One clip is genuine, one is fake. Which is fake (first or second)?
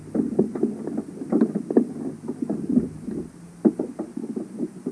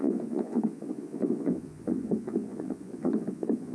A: second